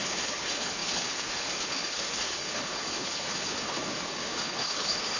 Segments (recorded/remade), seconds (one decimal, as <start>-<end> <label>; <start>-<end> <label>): 0.0-5.2 remade

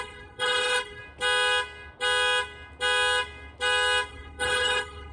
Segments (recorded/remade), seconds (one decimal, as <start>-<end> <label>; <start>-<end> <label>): 0.0-1.0 remade; 1.0-4.1 recorded; 4.1-5.1 remade

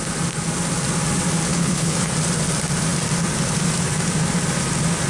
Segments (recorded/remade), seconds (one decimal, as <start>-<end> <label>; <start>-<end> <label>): 0.0-1.5 recorded; 1.5-2.1 remade; 2.1-5.1 recorded

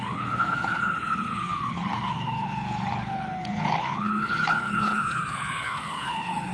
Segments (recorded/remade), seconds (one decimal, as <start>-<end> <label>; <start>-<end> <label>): 0.0-6.5 remade

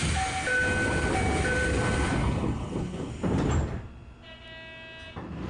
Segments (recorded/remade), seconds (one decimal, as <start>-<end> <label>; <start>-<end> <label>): 0.0-2.2 recorded; 2.2-3.1 remade; 3.1-5.5 recorded

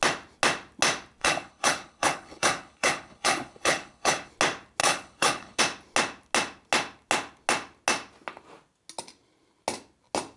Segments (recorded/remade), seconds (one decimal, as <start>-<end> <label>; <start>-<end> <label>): 0.0-1.2 recorded; 1.2-4.3 remade; 4.3-4.8 recorded; 4.8-5.6 remade; 5.6-10.4 recorded

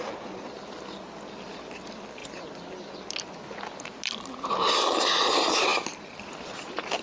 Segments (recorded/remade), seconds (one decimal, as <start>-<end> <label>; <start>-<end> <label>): 0.0-7.0 recorded